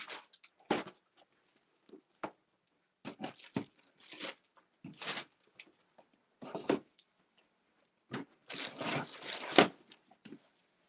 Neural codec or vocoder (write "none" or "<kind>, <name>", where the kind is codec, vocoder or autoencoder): none